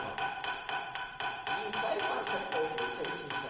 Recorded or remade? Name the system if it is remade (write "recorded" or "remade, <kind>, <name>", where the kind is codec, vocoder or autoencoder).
recorded